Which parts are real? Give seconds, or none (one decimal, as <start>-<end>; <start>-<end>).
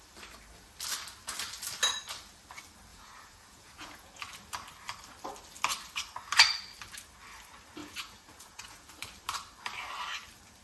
0.0-2.9; 4.2-7.8; 8.9-10.6